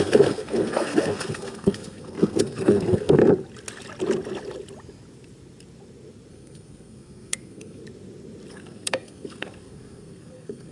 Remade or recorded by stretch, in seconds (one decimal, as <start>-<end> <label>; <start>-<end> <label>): 0.0-3.2 remade; 3.2-6.3 recorded; 6.3-7.8 remade; 7.8-8.5 recorded; 8.5-10.7 remade